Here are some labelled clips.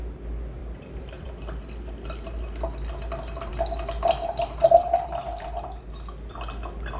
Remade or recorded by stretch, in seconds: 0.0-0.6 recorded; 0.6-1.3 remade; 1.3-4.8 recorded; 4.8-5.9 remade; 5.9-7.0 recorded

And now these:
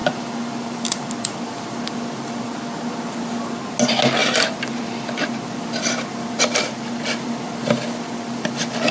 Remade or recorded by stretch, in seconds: 0.0-2.5 remade; 2.5-4.2 recorded; 4.2-8.9 remade

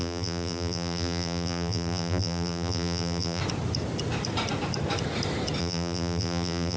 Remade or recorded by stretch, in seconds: 0.0-3.4 remade; 3.4-5.6 recorded; 5.6-6.8 remade